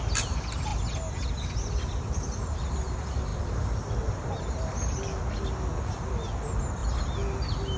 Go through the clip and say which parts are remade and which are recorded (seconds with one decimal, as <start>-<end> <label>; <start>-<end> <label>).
0.0-7.8 recorded